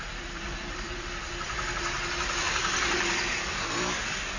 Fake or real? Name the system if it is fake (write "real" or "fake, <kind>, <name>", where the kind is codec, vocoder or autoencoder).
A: fake, vocoder, BigVGAN v2